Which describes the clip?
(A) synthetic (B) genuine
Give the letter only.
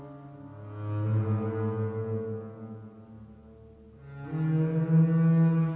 B